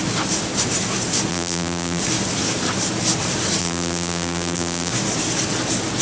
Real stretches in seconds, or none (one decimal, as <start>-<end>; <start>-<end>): 0.0-1.3; 2.0-3.6; 4.9-6.0